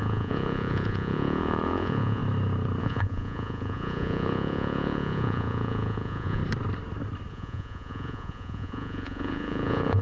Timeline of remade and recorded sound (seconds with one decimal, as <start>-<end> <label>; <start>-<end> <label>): 0.0-2.2 remade; 2.2-2.8 recorded; 2.8-6.4 remade; 6.4-7.3 recorded; 7.3-10.0 remade